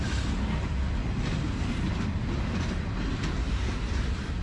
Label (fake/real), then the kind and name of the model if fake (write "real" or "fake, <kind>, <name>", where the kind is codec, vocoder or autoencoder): fake, vocoder, BigVGAN v2